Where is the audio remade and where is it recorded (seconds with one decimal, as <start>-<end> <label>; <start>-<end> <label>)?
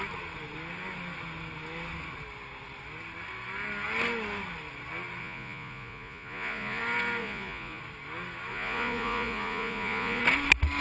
0.0-5.2 recorded; 5.2-6.8 remade; 6.8-7.2 recorded; 7.2-7.8 remade; 7.8-8.5 recorded; 8.5-10.2 remade; 10.2-10.8 recorded